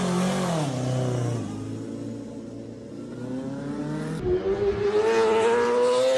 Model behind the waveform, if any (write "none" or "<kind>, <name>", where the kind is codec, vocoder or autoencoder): none